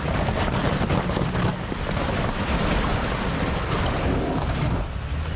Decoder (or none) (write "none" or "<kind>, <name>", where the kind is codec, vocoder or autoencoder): none